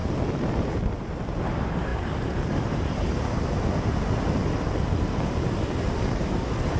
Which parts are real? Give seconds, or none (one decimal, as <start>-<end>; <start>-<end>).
0.0-6.8